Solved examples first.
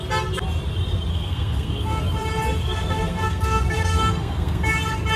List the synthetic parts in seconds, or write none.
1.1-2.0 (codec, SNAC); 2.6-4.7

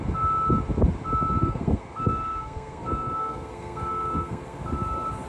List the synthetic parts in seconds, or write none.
1.4-4.6 (codec, SNAC)

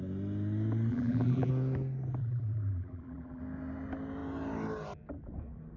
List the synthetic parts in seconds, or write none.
0.9-1.5 (vocoder, BigVGAN v2); 2.2-3.4

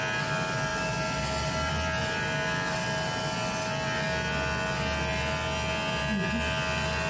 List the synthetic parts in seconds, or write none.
none

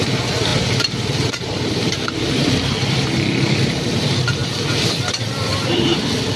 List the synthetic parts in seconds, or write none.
0.0-4.4 (vocoder, BigVGAN v2); 5.2-6.4

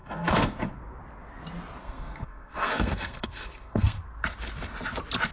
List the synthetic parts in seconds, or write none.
0.0-0.7 (codec, SNAC); 1.8-4.0

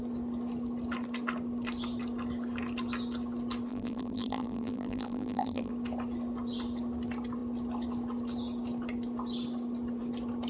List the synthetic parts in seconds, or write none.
3.7-5.7 (vocoder, BigVGAN v2)

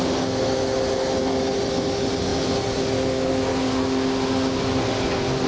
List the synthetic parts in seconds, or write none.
none